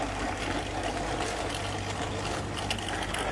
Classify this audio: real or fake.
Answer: real